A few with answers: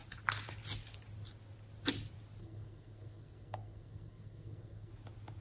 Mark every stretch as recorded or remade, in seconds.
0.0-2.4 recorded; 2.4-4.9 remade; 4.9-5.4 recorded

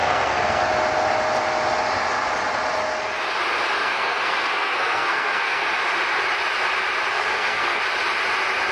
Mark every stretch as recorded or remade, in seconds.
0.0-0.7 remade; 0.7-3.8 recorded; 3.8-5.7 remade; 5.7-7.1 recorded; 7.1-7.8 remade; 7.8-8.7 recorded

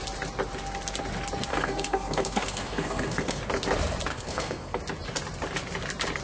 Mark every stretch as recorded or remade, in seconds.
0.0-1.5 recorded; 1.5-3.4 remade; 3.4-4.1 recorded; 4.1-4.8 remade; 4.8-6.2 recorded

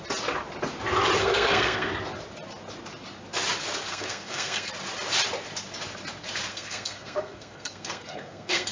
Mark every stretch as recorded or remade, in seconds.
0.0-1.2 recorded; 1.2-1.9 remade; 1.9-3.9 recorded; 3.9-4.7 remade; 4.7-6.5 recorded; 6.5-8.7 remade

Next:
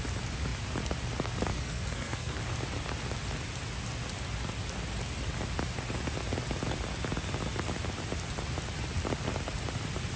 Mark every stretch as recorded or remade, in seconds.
0.0-1.5 recorded; 1.5-2.4 remade; 2.4-10.2 recorded